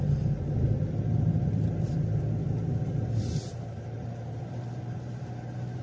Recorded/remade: recorded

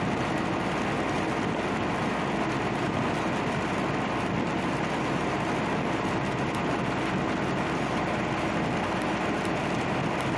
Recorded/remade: recorded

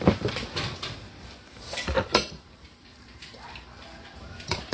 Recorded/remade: remade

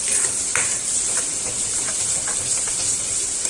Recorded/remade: remade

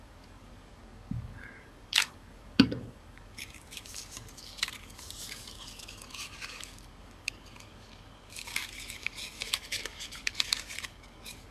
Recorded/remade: remade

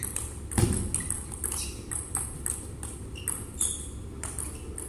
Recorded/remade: recorded